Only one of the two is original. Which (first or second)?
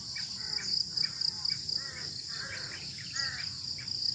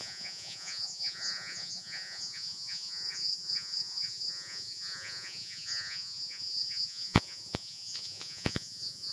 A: first